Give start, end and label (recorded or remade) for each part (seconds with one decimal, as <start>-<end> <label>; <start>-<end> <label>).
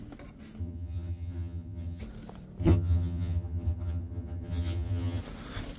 0.0-0.6 recorded; 0.6-2.0 remade; 2.0-2.6 recorded; 2.6-5.2 remade; 5.2-5.8 recorded